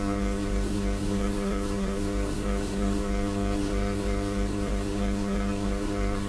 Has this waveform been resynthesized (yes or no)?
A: yes